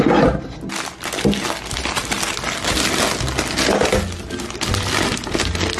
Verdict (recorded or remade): recorded